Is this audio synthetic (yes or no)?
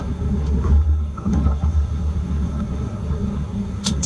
yes